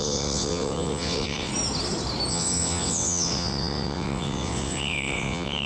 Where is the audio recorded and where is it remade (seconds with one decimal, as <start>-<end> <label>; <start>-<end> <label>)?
0.0-1.5 remade; 1.5-2.3 recorded; 2.3-5.7 remade